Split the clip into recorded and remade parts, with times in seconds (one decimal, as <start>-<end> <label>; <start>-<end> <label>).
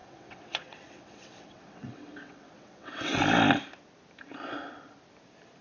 0.0-3.2 remade; 3.2-5.6 recorded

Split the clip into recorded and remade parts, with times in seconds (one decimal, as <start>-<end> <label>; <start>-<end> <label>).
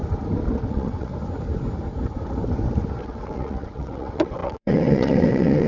0.0-0.7 recorded; 0.7-1.1 remade; 1.1-3.0 recorded; 3.0-5.7 remade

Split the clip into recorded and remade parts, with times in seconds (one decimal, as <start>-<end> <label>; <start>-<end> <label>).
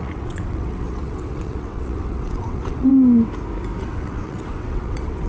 0.0-2.9 remade; 2.9-3.8 recorded; 3.8-5.3 remade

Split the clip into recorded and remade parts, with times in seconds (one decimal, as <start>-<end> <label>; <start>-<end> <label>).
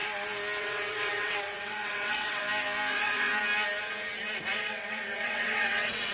0.0-0.6 recorded; 0.6-2.4 remade; 2.4-2.9 recorded; 2.9-3.3 remade; 3.3-4.4 recorded; 4.4-6.1 remade